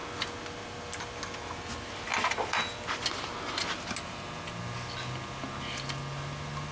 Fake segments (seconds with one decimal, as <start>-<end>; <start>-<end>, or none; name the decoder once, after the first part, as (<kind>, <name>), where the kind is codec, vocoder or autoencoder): none